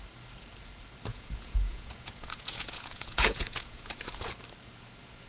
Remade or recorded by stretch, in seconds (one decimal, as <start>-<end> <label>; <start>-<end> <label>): 0.0-1.1 recorded; 1.1-4.3 remade; 4.3-5.3 recorded